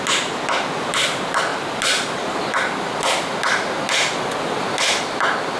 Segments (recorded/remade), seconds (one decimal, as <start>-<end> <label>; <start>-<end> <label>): 0.0-5.6 recorded